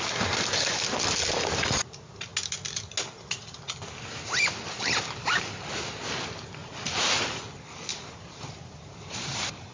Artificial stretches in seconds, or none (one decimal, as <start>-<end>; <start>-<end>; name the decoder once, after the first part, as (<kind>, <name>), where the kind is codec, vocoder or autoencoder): 6.6-7.4 (vocoder, BigVGAN v2); 7.9-9.7